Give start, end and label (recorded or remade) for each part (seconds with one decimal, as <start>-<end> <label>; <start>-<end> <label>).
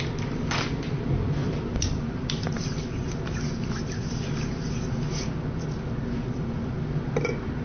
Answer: 0.0-7.6 recorded